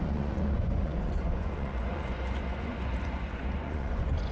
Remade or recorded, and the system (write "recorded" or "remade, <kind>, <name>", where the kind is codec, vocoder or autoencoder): remade, vocoder, Vocos